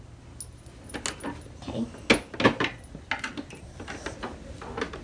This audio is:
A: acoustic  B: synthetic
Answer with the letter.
A